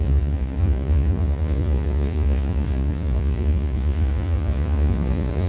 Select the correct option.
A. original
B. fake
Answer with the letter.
B